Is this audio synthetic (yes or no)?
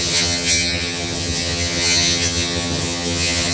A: yes